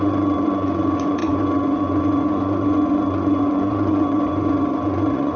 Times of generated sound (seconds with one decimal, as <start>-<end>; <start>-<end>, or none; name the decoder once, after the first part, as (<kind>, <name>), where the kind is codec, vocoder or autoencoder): 0.0-5.4 (vocoder, Vocos)